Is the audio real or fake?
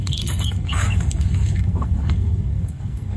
fake